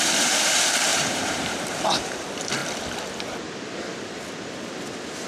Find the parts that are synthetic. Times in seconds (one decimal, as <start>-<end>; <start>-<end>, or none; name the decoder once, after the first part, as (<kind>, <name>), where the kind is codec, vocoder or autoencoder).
0.9-2.1 (vocoder, BigVGAN v2)